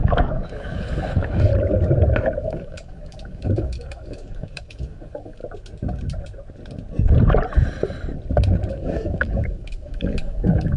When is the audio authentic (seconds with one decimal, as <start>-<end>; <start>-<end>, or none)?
1.5-2.4; 5.4-8.7